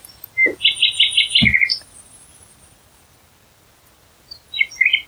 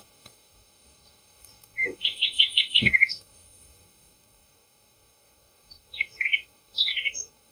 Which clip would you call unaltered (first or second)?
first